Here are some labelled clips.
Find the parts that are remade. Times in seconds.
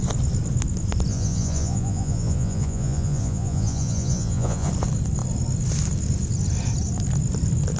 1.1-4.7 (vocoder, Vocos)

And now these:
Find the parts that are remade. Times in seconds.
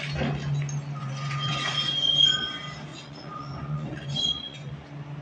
1.0-1.8 (vocoder, Vocos); 2.9-4.7